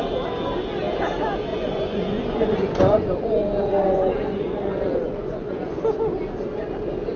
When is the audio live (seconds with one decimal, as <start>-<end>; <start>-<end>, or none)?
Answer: 0.0-1.5; 5.8-7.2